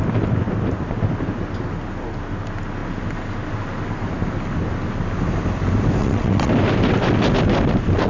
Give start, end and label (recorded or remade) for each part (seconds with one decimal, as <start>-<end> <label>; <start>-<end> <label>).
0.0-6.0 recorded; 6.0-6.5 remade; 6.5-8.1 recorded